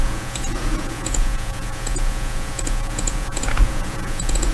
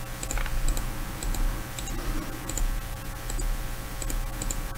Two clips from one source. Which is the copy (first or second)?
first